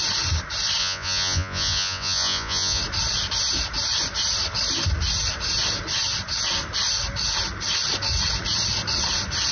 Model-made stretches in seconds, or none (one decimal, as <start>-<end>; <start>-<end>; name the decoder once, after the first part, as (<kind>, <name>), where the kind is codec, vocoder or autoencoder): 0.8-2.8 (vocoder, Vocos)